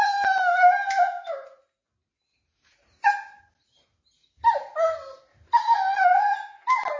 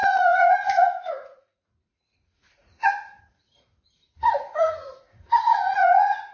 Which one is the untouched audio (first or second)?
first